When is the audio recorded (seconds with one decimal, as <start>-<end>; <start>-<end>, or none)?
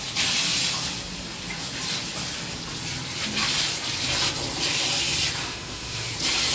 0.0-5.4; 6.1-6.5